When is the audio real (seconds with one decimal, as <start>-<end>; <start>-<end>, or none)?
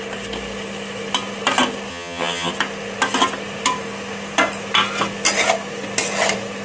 0.0-1.9; 2.5-6.6